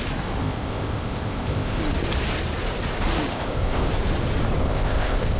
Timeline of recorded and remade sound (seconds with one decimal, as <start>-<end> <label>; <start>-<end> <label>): 0.0-0.4 recorded; 0.4-1.8 remade; 1.8-3.3 recorded; 3.3-3.9 remade; 3.9-4.6 recorded; 4.6-5.4 remade